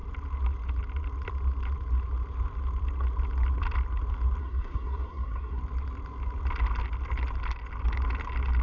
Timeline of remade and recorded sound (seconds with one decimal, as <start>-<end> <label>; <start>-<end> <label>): 0.0-4.4 recorded; 4.4-5.6 remade; 5.6-8.6 recorded